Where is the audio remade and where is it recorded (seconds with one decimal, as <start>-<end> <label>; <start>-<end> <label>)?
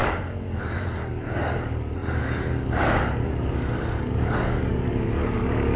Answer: 0.0-5.8 remade